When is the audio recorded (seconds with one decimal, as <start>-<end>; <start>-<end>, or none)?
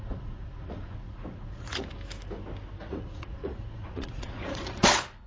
1.9-2.9